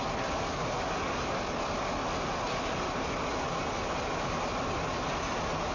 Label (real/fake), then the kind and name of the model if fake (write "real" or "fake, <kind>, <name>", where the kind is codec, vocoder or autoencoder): real